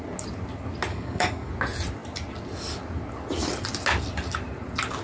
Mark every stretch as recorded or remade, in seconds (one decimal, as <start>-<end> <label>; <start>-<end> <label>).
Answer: 0.0-0.9 recorded; 0.9-1.5 remade; 1.5-5.0 recorded